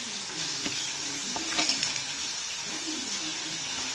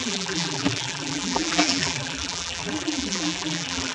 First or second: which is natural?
first